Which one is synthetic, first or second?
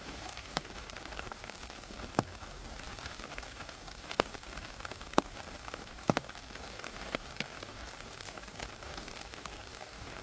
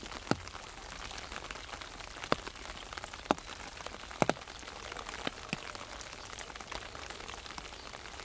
first